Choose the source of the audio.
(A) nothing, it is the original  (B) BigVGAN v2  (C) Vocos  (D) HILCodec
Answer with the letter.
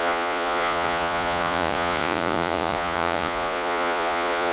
C